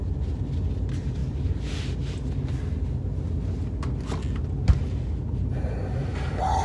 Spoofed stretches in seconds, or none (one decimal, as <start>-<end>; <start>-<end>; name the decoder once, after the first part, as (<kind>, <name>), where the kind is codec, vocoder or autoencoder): none